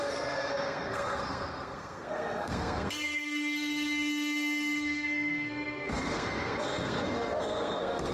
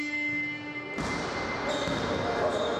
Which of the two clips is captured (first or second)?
second